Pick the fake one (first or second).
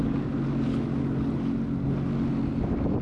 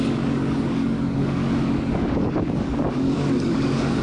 second